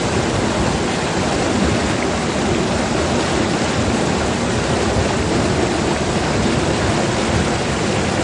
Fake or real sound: real